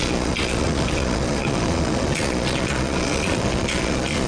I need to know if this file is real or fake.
fake